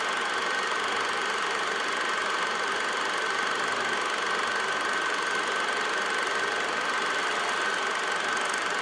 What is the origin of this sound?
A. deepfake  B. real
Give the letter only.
B